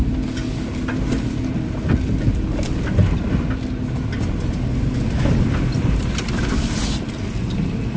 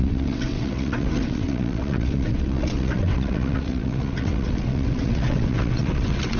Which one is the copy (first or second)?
second